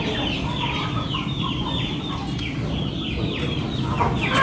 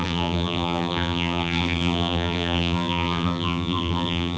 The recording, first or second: first